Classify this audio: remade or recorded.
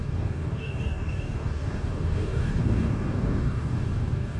remade